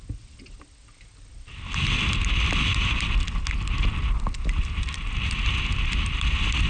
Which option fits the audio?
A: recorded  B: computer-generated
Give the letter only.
A